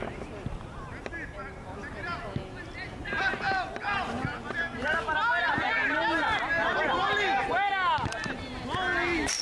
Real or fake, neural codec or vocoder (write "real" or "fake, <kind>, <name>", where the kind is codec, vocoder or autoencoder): real